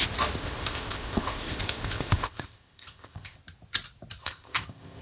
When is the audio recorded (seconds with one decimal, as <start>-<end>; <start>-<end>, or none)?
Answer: 0.0-0.4; 3.4-4.2